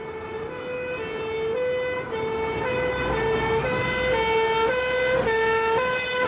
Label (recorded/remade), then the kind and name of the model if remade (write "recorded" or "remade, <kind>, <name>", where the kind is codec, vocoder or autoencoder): recorded